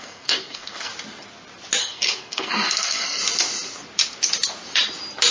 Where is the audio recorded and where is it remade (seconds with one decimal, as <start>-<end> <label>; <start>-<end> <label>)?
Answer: 0.0-0.9 remade; 0.9-1.8 recorded; 1.8-3.2 remade; 3.2-5.3 recorded